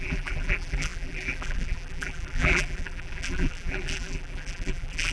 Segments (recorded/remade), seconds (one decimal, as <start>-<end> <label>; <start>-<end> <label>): 0.0-5.1 remade